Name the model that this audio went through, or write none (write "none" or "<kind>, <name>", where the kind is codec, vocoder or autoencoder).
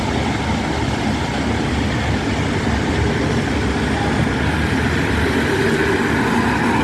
none